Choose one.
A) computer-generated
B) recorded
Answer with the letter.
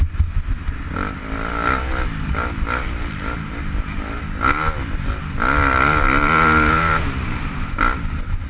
B